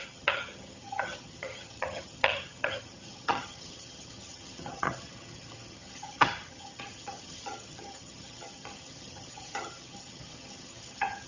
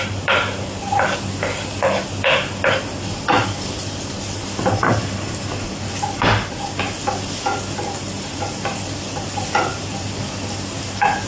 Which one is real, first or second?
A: second